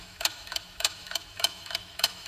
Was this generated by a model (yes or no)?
yes